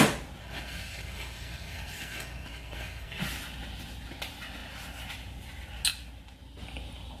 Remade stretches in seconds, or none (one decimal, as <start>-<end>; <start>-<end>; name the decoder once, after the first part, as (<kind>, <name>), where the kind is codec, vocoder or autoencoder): 0.4-3.2 (codec, SNAC)